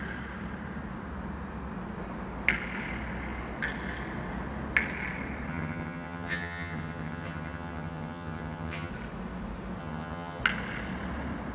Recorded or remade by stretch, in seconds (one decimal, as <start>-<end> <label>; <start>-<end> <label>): 0.0-5.5 recorded; 5.5-8.9 remade; 8.9-9.8 recorded; 9.8-10.4 remade; 10.4-11.5 recorded